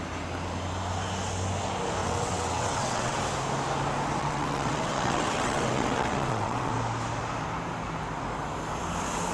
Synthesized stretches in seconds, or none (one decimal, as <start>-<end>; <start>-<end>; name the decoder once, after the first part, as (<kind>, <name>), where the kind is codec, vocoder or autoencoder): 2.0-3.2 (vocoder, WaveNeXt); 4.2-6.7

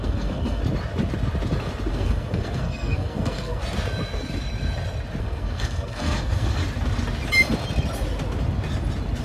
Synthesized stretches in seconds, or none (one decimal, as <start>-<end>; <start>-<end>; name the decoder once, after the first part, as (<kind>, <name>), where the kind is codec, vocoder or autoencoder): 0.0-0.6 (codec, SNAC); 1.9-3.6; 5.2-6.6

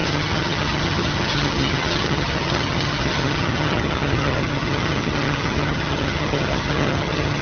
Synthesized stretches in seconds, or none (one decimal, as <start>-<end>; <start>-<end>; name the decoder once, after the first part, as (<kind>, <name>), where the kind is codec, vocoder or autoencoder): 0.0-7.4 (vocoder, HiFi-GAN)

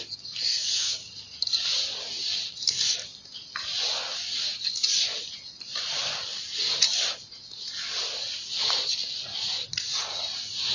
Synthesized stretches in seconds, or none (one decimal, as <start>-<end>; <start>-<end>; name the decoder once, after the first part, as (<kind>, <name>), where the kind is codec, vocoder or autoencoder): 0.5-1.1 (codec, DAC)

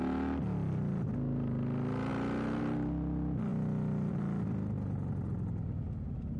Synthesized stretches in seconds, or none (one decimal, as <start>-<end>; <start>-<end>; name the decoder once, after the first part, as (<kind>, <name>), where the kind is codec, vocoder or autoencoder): none

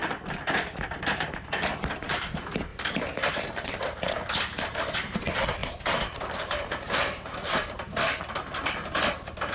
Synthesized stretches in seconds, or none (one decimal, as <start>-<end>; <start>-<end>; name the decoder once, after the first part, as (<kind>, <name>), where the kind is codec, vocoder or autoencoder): 2.7-3.8 (vocoder, BigVGAN v2); 5.6-8.0

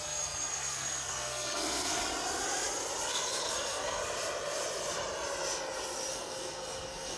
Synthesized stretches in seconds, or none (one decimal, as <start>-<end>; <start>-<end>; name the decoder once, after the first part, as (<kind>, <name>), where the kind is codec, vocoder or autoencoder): 0.0-2.0 (codec, SNAC); 3.1-4.0; 6.1-7.2